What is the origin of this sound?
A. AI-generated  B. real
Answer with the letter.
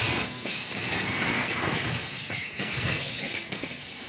A